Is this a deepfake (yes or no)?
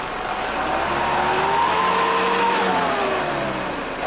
no